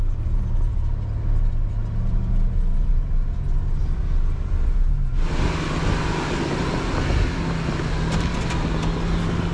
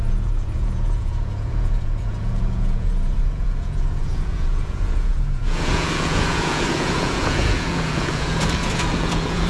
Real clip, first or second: first